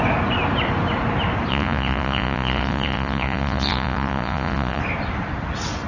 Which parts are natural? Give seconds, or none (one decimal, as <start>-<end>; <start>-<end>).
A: 0.0-1.5; 4.8-5.9